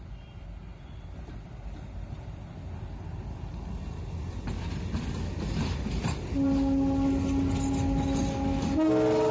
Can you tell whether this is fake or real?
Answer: real